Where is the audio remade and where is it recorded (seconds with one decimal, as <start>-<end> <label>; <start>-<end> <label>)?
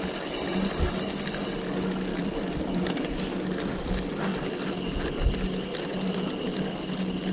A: 0.0-2.1 recorded; 2.1-3.3 remade; 3.3-4.3 recorded; 4.3-5.0 remade; 5.0-5.7 recorded; 5.7-6.7 remade; 6.7-7.3 recorded